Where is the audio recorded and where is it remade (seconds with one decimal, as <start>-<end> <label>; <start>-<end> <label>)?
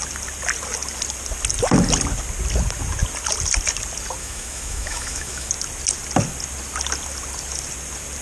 0.0-4.2 recorded; 4.2-5.5 remade; 5.5-8.2 recorded